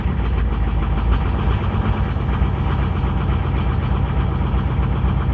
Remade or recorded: recorded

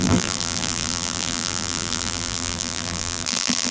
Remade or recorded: remade